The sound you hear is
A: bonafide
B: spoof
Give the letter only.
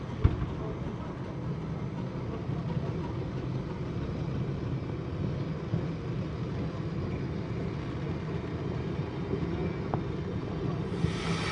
A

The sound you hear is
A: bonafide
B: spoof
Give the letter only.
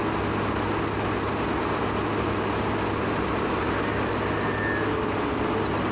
A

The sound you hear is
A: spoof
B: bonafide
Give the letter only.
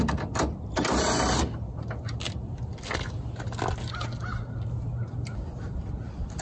B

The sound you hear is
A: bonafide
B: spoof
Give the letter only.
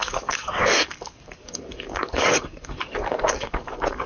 B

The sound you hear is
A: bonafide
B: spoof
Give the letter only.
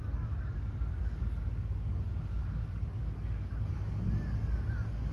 B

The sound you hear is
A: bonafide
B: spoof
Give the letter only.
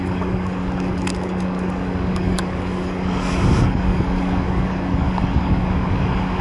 B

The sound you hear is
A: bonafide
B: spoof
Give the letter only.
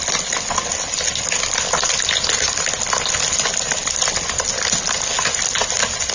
A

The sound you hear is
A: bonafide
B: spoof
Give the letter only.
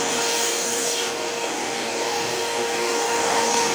B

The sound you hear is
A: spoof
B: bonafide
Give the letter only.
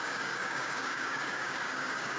A